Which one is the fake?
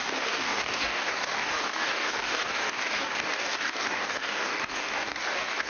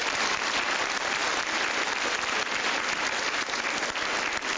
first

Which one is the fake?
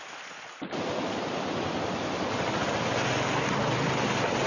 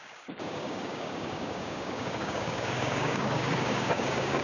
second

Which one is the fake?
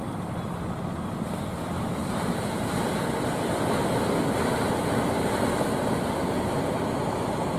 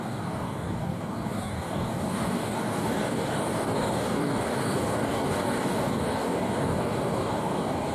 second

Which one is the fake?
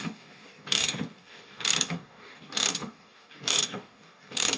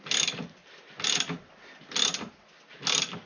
first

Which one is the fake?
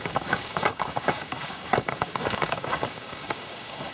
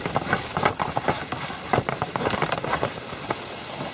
first